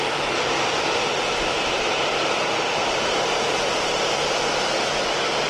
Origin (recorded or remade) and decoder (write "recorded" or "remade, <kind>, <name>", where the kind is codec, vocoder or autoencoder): recorded